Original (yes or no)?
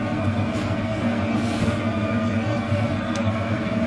no